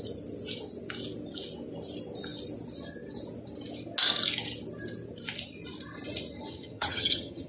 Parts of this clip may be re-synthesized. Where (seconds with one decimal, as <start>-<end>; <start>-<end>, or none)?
6.5-7.5